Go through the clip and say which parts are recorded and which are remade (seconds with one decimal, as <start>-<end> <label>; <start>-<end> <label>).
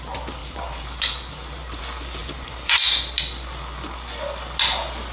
0.0-0.4 recorded; 0.4-1.8 remade; 1.8-2.2 recorded; 2.2-2.9 remade; 2.9-5.1 recorded